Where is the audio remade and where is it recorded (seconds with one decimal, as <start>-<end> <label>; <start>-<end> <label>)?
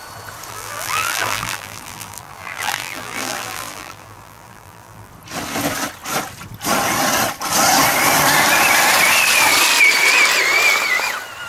0.0-0.5 recorded; 0.5-5.1 remade; 5.1-11.5 recorded